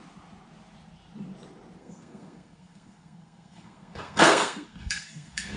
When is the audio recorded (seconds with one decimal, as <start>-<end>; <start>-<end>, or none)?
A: 0.0-1.8

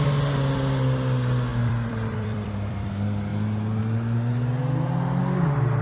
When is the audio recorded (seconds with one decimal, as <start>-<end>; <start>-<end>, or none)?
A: 0.0-1.5; 2.9-5.8

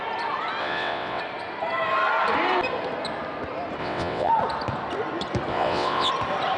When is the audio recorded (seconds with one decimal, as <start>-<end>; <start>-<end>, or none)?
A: 0.0-0.6; 1.2-3.8; 4.3-5.5; 6.1-6.6